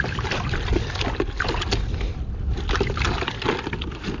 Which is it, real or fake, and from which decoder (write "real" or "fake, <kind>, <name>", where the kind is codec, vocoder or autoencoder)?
real